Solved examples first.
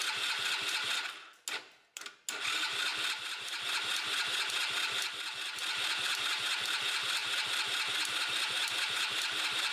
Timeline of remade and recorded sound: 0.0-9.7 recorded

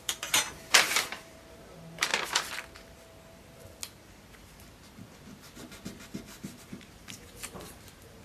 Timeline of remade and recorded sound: 0.0-2.1 remade; 2.1-6.6 recorded; 6.6-8.2 remade